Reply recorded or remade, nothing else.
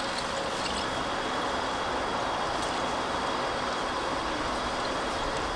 recorded